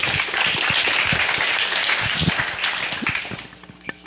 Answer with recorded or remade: recorded